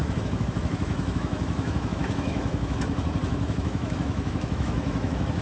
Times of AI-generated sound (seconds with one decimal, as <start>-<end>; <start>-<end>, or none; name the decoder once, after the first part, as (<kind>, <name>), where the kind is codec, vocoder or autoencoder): 0.0-5.4 (autoencoder, DAC-VAE)

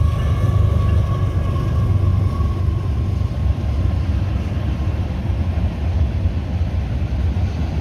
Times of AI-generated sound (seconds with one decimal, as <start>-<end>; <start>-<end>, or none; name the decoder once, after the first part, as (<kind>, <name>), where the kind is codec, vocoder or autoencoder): none

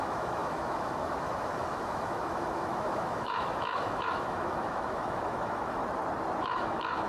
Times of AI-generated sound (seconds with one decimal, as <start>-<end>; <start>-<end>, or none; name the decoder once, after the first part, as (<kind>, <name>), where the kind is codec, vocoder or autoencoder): 0.0-5.8 (autoencoder, DAC-VAE); 6.4-7.1

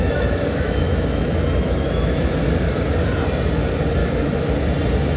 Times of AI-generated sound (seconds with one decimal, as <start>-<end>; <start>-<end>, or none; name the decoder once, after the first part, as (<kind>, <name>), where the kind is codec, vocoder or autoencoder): 0.0-2.3 (autoencoder, DAC-VAE); 4.0-4.5